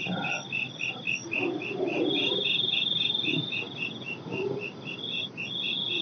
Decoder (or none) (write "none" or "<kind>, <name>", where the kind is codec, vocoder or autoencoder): none